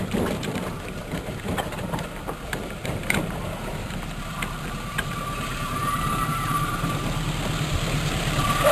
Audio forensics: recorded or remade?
remade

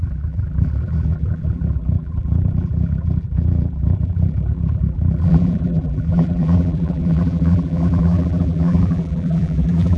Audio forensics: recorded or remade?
remade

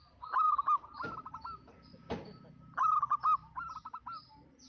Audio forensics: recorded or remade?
recorded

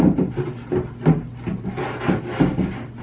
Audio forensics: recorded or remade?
recorded